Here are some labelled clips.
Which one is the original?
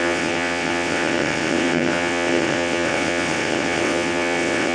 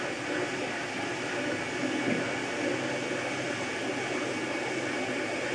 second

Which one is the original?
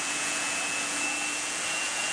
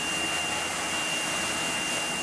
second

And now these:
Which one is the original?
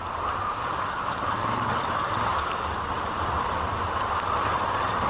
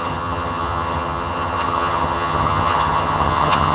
first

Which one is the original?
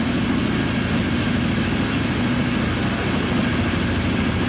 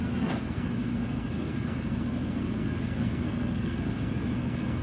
first